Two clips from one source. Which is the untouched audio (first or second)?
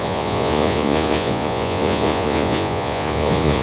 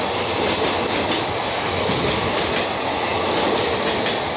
second